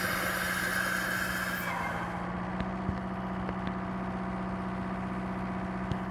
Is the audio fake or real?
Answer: real